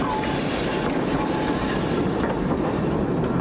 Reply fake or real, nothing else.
real